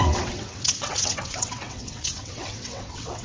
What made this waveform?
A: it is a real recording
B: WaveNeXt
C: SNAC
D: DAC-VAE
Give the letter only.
B